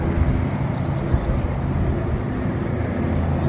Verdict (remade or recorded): recorded